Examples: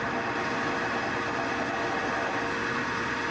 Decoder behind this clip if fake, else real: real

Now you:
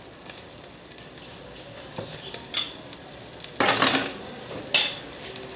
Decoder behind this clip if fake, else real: real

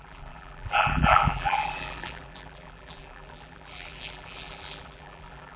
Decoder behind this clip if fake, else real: fake, vocoder, BigVGAN v2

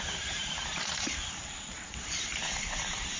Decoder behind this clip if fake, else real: fake, vocoder, BigVGAN v2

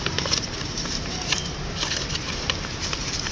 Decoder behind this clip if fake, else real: fake, vocoder, BigVGAN v2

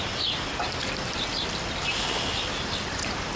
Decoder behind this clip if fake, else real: fake, vocoder, BigVGAN v2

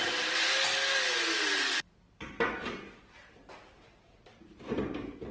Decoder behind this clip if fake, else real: real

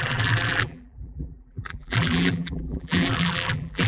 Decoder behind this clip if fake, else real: fake, vocoder, BigVGAN v2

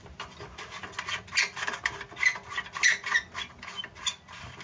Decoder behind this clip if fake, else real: real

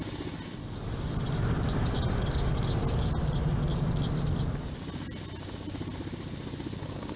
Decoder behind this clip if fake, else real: real